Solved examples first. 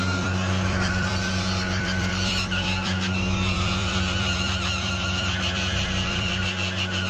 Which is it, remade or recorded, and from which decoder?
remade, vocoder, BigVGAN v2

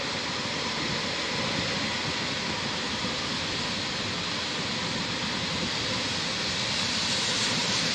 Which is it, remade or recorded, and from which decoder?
recorded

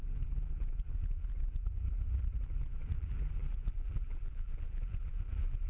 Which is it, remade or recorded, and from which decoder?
remade, vocoder, BigVGAN v2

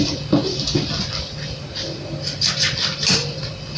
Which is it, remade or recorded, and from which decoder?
remade, vocoder, BigVGAN v2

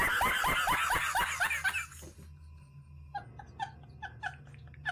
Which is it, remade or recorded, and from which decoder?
recorded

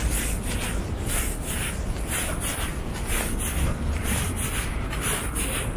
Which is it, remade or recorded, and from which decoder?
recorded